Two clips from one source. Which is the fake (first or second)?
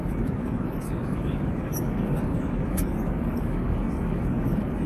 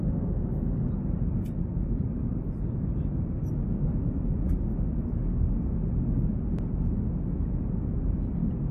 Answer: first